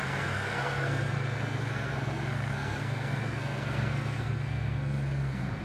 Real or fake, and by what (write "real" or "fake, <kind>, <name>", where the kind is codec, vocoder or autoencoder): fake, codec, SNAC